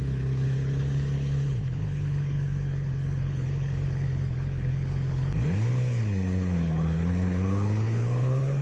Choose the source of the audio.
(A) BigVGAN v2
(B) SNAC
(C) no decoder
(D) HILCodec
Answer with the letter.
D